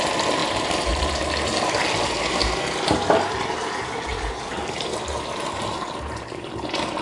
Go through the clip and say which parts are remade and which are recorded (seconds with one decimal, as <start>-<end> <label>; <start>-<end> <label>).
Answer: 0.0-0.4 recorded; 0.4-1.3 remade; 1.3-4.1 recorded; 4.1-6.5 remade; 6.5-7.0 recorded